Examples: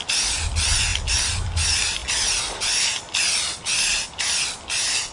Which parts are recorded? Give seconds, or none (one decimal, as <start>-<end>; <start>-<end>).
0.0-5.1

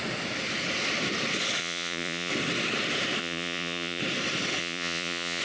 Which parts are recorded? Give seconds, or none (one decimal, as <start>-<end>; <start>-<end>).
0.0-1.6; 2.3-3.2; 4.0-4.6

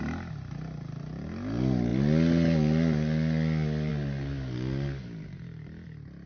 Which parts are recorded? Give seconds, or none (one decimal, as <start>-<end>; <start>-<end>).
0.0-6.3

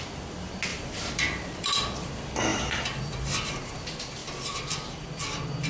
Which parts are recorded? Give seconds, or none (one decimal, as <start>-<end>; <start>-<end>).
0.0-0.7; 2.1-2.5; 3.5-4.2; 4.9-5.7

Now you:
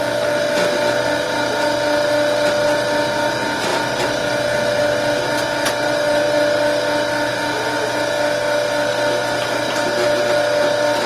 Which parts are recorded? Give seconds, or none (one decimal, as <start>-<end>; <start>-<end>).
0.0-11.1

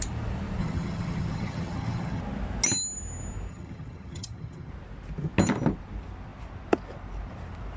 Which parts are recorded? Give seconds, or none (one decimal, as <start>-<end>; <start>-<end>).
0.0-0.6; 2.2-3.5; 4.7-7.8

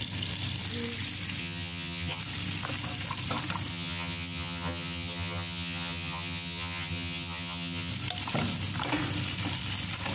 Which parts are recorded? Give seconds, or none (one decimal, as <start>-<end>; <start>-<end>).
0.0-1.4; 2.2-3.7; 7.9-10.1

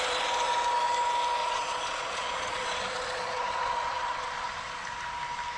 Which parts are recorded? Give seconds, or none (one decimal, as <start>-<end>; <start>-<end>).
0.0-1.4; 4.7-5.6